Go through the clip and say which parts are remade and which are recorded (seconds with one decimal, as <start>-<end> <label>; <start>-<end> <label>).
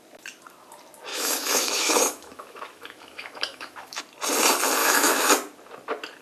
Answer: 0.0-1.1 recorded; 1.1-4.0 remade; 4.0-4.8 recorded; 4.8-5.3 remade; 5.3-6.2 recorded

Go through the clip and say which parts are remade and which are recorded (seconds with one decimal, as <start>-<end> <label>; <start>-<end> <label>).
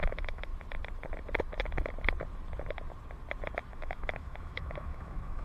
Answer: 0.0-0.5 remade; 0.5-3.7 recorded; 3.7-5.4 remade